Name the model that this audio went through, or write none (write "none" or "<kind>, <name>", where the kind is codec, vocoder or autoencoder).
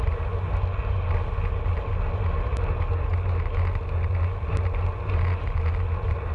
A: none